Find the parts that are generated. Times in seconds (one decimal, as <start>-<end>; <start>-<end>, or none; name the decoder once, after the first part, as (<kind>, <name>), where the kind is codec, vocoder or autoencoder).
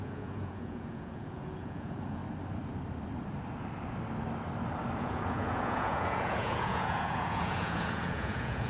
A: 0.0-2.2 (vocoder, Vocos); 5.0-8.7